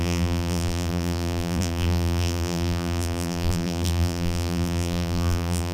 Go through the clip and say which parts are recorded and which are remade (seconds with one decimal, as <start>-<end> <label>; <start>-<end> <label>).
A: 0.0-5.7 remade